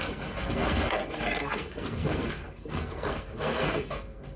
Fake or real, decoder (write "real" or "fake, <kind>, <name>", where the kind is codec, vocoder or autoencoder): fake, codec, SNAC